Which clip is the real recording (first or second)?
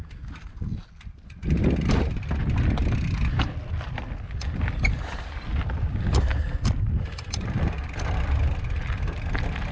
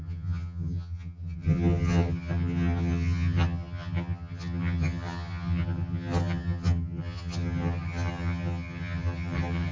first